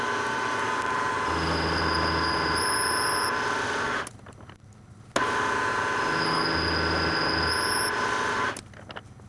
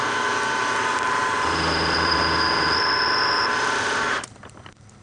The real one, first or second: first